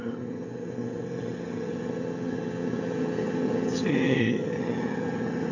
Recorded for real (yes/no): no